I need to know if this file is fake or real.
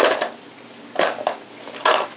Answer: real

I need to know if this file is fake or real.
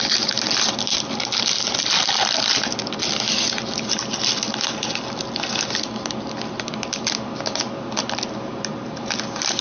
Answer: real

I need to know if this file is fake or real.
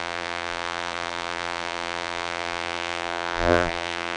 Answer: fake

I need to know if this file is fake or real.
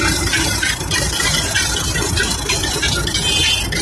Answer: fake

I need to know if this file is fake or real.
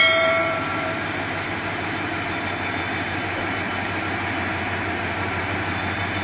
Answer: fake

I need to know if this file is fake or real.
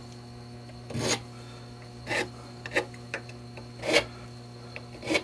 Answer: real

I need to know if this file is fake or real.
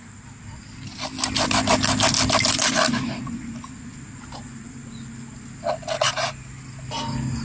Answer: real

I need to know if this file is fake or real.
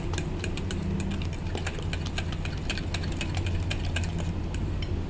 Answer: real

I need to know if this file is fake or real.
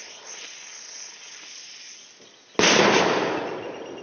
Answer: real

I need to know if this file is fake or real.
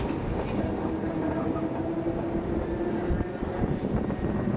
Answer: real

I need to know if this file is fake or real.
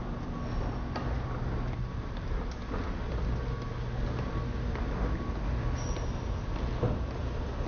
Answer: real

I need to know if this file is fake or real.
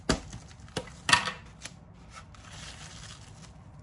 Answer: real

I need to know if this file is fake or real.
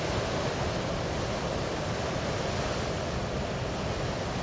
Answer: real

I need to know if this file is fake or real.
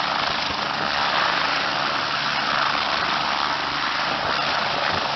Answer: real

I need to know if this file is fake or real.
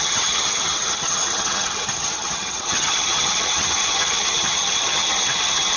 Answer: fake